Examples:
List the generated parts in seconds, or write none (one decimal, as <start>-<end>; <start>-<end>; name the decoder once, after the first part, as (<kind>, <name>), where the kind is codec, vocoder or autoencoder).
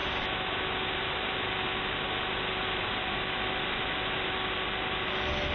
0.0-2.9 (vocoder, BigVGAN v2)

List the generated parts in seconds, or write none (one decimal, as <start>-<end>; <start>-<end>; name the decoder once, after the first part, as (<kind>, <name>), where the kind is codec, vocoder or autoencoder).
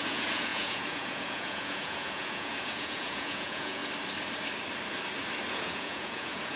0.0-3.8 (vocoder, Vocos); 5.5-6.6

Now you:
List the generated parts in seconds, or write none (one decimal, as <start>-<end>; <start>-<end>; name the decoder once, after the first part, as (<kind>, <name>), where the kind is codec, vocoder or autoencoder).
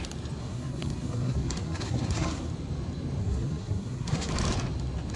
0.4-2.5 (codec, SNAC); 3.2-4.3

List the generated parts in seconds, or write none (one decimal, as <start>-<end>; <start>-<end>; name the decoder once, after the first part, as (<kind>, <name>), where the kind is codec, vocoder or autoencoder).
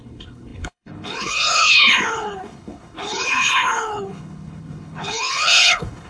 0.0-6.1 (codec, HILCodec)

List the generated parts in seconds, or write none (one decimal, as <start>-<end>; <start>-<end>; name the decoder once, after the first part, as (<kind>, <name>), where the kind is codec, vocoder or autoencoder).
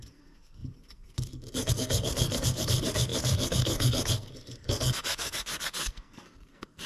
0.0-6.9 (codec, SNAC)